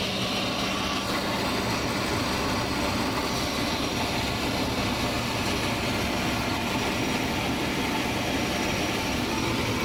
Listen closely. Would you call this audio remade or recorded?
recorded